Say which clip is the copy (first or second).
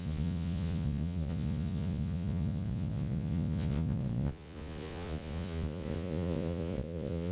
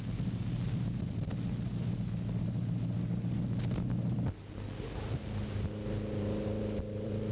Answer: first